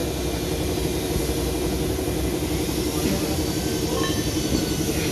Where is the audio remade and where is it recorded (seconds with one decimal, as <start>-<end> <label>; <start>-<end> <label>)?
0.0-5.1 recorded